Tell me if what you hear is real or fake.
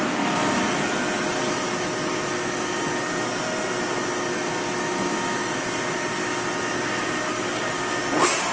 real